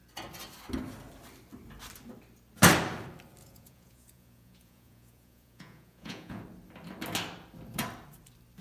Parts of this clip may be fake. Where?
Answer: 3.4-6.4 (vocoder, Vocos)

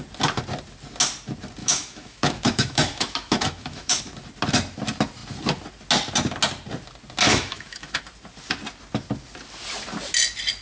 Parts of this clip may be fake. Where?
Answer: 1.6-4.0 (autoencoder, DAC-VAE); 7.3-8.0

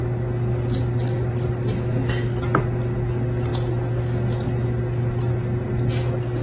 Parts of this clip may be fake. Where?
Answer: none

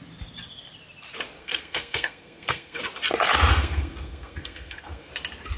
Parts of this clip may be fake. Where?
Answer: 1.4-2.8 (codec, SNAC); 3.5-5.1

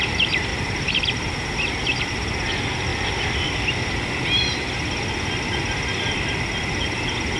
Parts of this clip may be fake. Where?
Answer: none

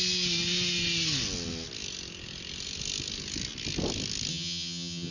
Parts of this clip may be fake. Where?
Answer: 4.3-5.1 (vocoder, HiFi-GAN)